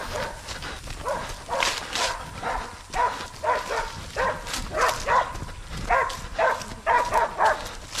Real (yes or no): yes